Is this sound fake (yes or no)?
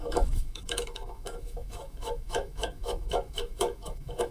yes